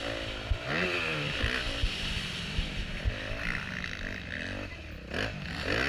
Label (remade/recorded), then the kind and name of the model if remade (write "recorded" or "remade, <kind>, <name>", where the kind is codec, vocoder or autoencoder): recorded